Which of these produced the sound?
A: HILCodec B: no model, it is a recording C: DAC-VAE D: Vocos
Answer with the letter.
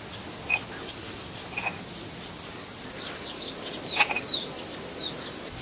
B